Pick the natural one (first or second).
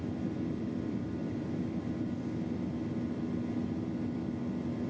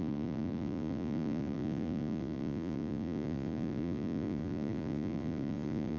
first